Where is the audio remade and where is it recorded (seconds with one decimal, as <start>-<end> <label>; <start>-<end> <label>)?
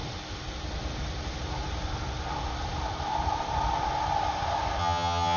0.0-4.8 recorded; 4.8-5.4 remade